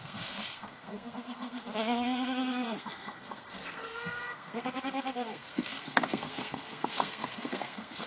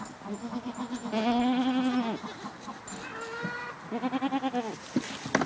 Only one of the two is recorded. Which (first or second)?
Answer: second